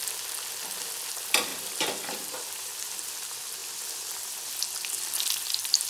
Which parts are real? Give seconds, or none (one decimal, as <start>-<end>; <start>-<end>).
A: 0.0-1.5; 3.2-5.9